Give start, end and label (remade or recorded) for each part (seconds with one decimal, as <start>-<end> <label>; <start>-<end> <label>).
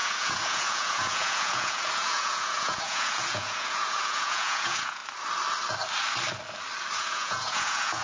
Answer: 0.0-5.0 remade; 5.0-7.0 recorded; 7.0-8.0 remade